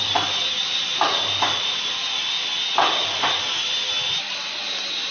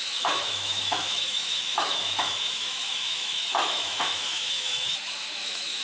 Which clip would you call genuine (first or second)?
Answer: first